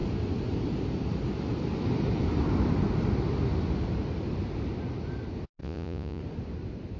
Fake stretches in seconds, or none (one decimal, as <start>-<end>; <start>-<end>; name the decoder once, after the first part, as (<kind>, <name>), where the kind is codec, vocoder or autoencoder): 5.6-6.2 (vocoder, Vocos)